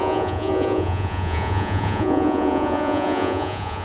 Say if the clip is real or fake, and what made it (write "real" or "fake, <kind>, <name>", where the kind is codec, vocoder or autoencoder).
fake, vocoder, Vocos